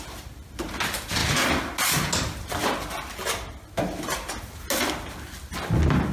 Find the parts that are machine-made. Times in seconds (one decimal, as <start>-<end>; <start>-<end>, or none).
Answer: none